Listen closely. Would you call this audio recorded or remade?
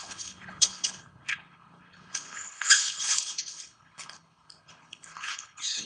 remade